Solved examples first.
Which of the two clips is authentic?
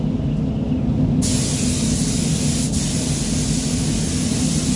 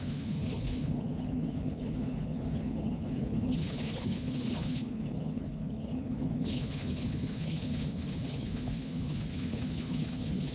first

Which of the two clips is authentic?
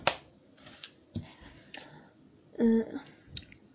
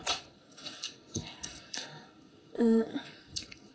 first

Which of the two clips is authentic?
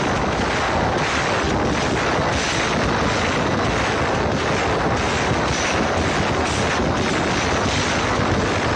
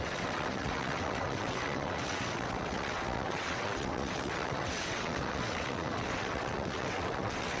first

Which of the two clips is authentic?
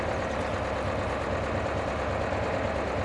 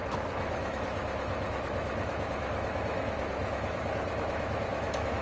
first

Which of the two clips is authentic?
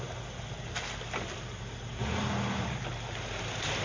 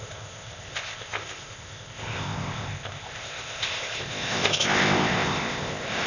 first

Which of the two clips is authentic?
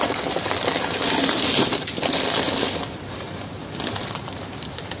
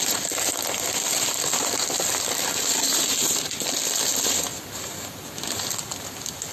second